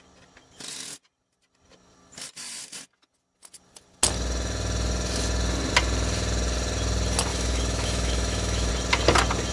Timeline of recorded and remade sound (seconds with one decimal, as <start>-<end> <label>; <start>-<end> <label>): 0.0-7.3 recorded; 7.3-8.7 remade; 8.7-9.5 recorded